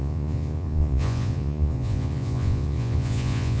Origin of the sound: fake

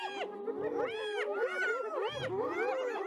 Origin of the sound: real